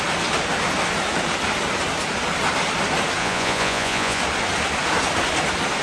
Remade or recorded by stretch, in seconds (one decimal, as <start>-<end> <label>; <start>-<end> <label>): 0.0-3.2 recorded; 3.2-4.2 remade; 4.2-5.8 recorded